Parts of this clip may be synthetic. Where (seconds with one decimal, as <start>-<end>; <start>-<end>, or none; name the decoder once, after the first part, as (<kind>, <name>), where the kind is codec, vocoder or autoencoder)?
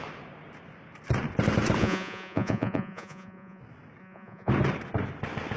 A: 1.8-3.6 (vocoder, Vocos); 4.0-4.5